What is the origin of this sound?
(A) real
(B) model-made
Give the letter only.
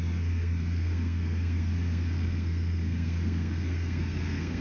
B